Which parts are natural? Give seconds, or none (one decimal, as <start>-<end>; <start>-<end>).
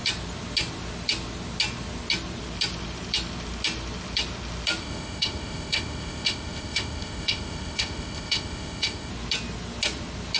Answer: 0.0-4.8; 9.1-10.4